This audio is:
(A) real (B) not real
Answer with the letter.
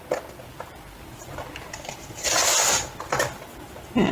A